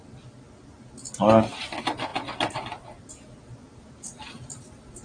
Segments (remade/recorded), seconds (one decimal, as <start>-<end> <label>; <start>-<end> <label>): 0.0-5.0 recorded